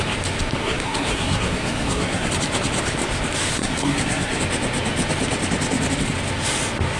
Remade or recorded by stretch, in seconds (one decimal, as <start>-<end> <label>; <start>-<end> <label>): 0.0-0.6 recorded; 0.6-2.3 remade; 2.3-3.6 recorded; 3.6-4.4 remade; 4.4-7.0 recorded